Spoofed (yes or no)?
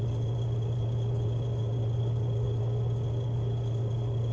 no